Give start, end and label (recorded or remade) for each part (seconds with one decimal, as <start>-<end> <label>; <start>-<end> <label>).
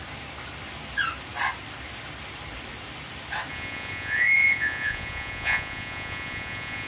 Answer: 0.0-3.5 recorded; 3.5-6.9 remade